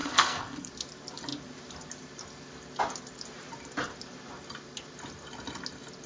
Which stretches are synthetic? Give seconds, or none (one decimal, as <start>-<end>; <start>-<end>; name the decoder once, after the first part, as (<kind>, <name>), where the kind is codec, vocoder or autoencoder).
0.0-0.7 (codec, SNAC)